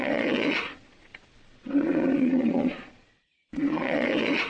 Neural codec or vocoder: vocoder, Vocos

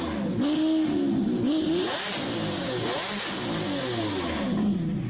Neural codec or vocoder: none